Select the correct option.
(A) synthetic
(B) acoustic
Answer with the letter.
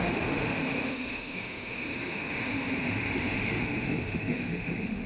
A